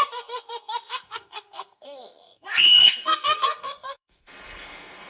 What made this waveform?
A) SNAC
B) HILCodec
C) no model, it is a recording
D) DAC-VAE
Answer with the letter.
A